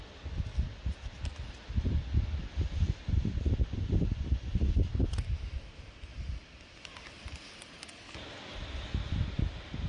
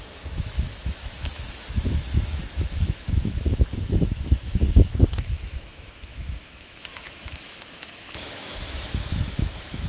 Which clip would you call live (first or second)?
first